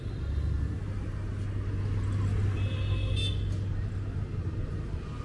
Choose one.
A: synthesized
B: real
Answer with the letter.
B